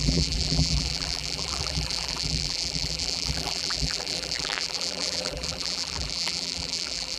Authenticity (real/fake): fake